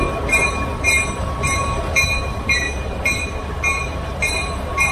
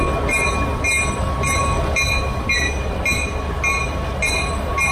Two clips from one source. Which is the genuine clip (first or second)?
second